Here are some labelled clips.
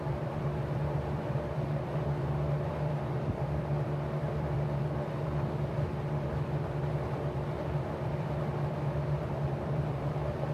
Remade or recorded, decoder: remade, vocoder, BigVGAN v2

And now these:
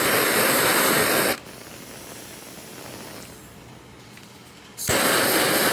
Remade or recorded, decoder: remade, vocoder, BigVGAN v2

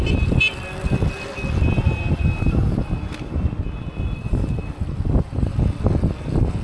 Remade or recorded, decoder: recorded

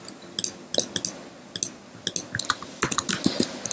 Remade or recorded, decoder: recorded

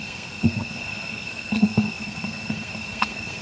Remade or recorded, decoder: remade, codec, SNAC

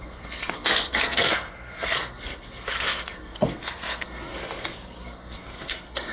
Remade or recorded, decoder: remade, codec, SNAC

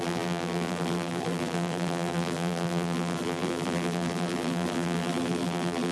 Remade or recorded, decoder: remade, vocoder, BigVGAN v2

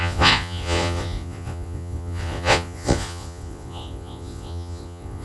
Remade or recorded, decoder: remade, vocoder, Vocos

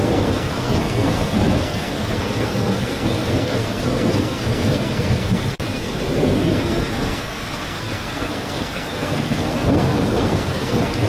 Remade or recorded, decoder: remade, codec, SNAC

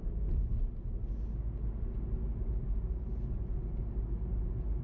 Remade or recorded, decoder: recorded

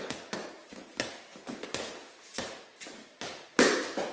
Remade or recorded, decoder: recorded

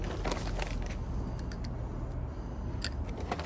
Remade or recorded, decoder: recorded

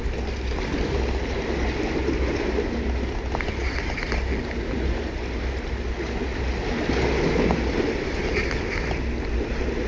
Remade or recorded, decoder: recorded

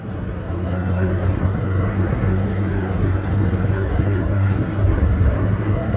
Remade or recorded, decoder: remade, codec, SNAC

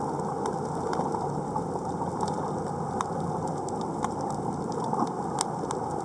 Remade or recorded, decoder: recorded